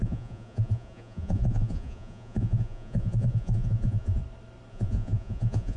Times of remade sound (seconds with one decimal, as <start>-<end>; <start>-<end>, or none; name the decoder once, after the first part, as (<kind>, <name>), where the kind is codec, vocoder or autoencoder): 0.0-4.2 (vocoder, Vocos); 4.7-5.8